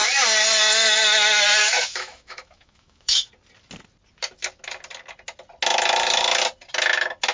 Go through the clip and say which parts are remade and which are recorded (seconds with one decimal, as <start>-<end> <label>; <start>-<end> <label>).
0.0-1.6 recorded; 1.6-3.3 remade; 3.3-7.3 recorded